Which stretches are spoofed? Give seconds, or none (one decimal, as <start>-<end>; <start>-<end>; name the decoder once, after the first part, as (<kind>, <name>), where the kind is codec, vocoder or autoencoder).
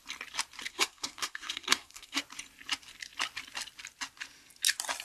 0.7-2.2 (codec, SNAC)